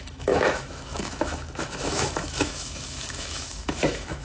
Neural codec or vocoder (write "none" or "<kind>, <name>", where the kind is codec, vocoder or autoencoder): autoencoder, DAC-VAE